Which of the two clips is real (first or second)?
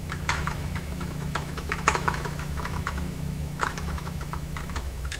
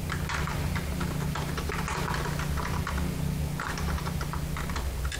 second